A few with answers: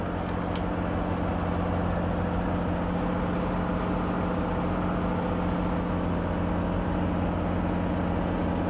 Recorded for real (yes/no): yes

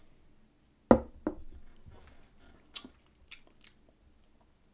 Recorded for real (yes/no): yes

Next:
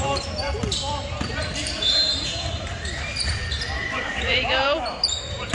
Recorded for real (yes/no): no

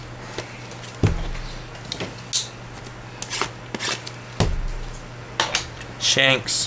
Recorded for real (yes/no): yes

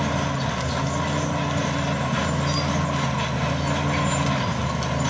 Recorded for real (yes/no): yes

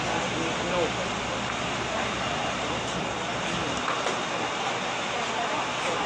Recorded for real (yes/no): yes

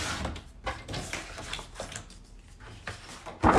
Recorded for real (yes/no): yes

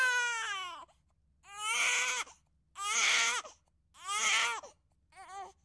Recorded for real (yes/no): yes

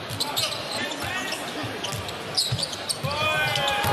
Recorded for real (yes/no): yes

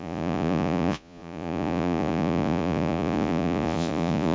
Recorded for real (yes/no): no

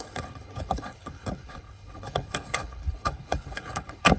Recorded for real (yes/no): no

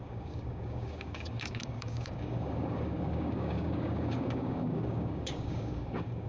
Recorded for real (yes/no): no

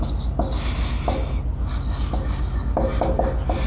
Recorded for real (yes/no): yes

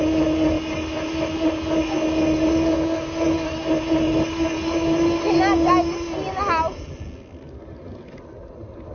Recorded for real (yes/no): yes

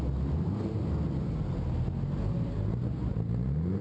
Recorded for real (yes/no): yes